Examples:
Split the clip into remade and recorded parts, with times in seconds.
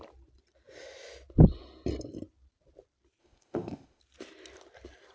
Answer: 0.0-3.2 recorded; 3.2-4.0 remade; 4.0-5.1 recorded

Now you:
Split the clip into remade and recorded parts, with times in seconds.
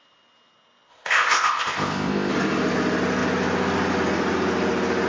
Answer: 0.0-0.9 recorded; 0.9-2.3 remade; 2.3-5.1 recorded